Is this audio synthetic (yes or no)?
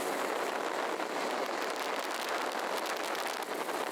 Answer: no